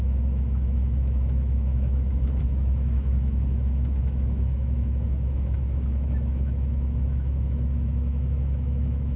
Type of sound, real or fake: fake